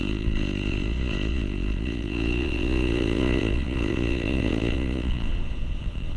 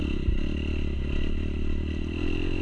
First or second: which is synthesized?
first